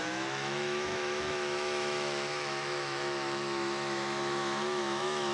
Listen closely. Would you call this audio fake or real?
fake